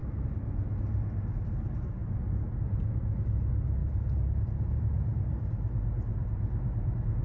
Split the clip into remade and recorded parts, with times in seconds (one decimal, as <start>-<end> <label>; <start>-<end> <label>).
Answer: 0.0-3.8 recorded; 3.8-7.2 remade

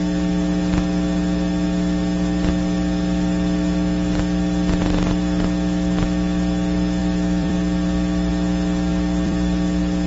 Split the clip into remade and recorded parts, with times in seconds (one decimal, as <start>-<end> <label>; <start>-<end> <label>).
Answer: 0.0-7.0 recorded; 7.0-8.3 remade; 8.3-8.9 recorded; 8.9-10.1 remade

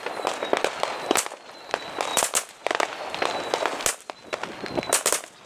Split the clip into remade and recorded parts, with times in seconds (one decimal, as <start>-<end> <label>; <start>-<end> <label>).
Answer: 0.0-5.5 recorded

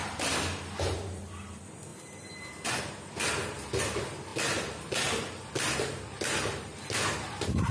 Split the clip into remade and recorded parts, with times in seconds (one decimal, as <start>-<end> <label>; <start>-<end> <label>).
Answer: 0.0-1.2 remade; 1.2-7.7 recorded